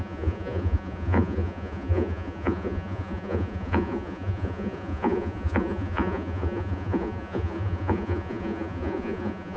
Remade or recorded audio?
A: remade